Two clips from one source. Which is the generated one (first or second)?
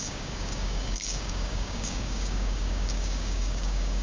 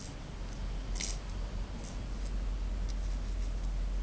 first